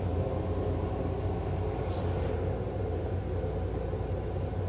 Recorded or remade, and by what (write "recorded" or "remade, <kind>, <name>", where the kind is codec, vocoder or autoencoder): recorded